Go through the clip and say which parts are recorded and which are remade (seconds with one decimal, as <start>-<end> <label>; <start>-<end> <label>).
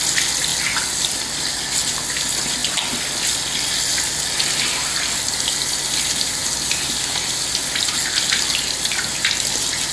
0.0-9.9 recorded